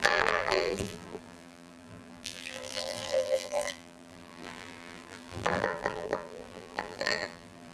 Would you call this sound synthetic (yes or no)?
yes